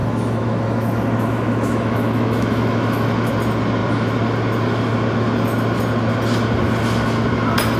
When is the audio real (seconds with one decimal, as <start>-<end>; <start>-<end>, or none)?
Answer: 3.3-7.8